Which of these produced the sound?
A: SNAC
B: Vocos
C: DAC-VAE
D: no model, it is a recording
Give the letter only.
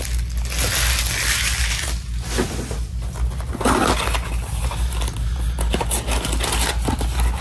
D